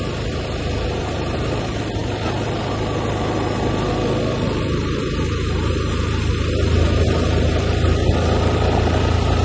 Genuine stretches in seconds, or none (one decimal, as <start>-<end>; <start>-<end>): 0.0-9.4